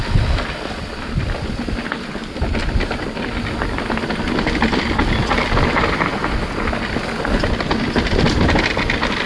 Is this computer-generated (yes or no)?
no